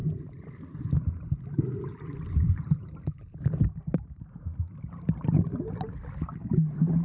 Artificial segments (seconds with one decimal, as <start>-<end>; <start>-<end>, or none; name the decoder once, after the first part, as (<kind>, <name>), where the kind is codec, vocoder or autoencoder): none